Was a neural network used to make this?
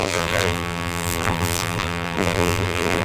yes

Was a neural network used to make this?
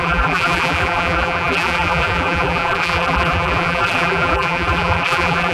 yes